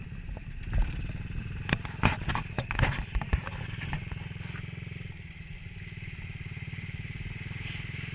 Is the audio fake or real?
real